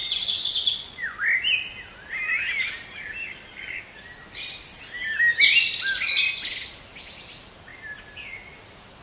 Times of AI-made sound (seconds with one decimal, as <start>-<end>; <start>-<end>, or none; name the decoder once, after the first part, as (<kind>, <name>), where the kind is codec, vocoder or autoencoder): 0.0-1.2 (vocoder, Vocos)